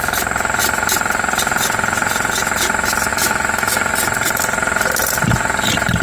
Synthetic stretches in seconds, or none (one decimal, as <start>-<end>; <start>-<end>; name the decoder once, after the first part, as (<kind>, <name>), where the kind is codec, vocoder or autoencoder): 3.1-3.9 (autoencoder, DAC-VAE)